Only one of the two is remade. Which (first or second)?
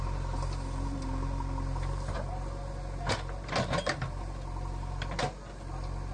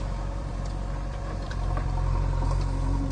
second